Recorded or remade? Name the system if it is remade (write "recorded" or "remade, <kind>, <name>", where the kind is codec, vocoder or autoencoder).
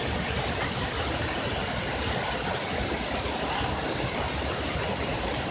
recorded